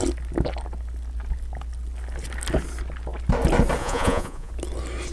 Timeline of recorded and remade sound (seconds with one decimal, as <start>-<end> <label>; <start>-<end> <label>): 0.0-3.8 recorded; 3.8-4.5 remade; 4.5-5.1 recorded